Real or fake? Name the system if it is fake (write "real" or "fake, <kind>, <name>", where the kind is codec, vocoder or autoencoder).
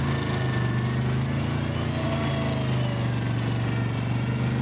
real